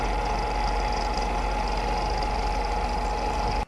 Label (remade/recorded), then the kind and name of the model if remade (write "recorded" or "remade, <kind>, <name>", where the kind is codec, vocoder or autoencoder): recorded